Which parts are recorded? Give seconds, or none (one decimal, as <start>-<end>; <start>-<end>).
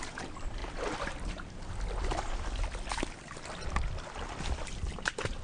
0.0-5.4